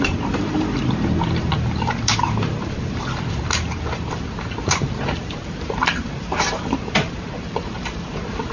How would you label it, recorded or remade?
remade